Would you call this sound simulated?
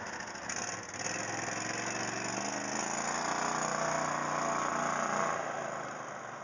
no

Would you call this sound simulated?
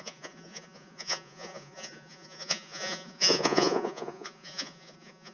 yes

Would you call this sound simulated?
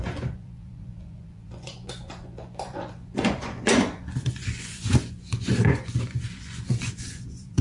yes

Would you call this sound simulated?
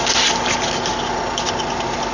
no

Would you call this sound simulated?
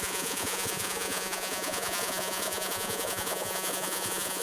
yes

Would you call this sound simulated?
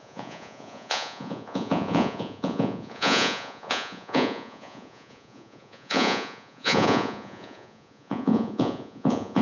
yes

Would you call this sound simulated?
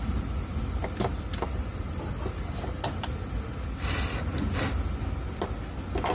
no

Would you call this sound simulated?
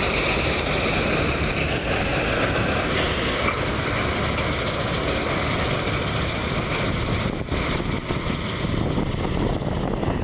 no